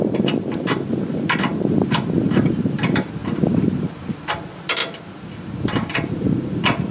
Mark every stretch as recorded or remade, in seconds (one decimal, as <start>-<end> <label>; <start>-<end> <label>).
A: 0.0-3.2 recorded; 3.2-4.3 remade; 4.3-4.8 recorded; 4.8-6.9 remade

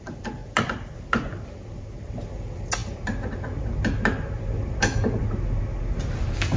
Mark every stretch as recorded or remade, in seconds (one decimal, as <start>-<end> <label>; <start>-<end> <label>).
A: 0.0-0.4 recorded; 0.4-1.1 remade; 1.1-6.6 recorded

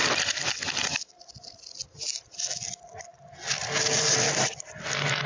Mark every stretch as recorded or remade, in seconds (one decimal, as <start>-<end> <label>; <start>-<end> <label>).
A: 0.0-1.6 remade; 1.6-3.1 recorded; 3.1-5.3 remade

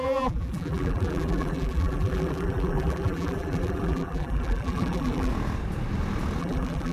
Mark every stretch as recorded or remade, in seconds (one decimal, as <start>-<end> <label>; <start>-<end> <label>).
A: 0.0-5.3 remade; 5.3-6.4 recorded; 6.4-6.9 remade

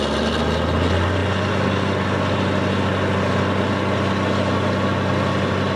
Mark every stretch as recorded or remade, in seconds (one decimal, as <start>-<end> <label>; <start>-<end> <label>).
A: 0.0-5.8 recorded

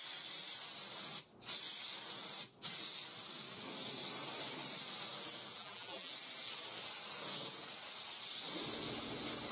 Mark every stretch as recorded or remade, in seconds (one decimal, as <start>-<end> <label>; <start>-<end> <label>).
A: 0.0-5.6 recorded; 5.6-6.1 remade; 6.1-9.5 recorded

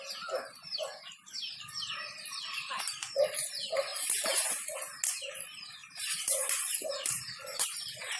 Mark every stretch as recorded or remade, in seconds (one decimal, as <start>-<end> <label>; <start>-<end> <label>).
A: 0.0-3.9 recorded; 3.9-4.5 remade; 4.5-5.8 recorded; 5.8-8.2 remade

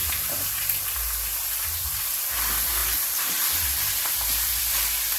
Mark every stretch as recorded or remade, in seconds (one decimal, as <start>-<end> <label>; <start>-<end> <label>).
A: 0.0-0.8 remade; 0.8-2.8 recorded; 2.8-3.4 remade; 3.4-5.2 recorded